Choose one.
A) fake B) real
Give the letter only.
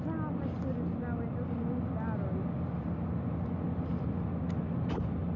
B